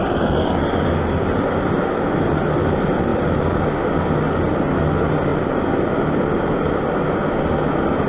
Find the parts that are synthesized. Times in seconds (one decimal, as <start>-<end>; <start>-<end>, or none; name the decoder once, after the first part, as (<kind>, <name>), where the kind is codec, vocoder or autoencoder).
none